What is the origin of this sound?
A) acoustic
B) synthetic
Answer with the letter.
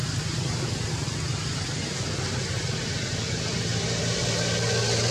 A